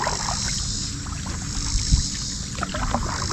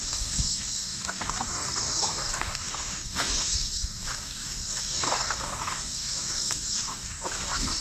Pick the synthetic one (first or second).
second